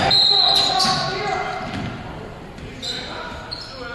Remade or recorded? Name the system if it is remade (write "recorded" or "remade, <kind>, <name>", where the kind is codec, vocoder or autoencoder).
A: recorded